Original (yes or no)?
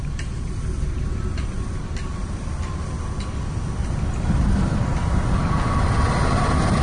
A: yes